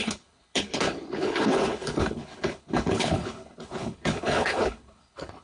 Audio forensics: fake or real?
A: fake